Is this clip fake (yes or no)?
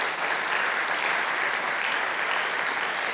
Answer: no